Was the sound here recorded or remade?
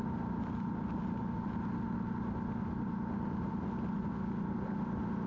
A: recorded